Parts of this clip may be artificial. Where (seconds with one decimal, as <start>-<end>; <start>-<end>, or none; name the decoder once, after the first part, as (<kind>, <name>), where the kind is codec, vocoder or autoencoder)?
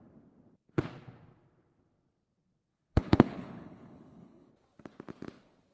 2.7-4.5 (codec, HILCodec)